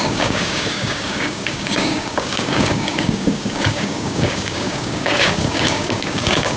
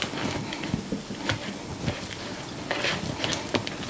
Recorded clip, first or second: second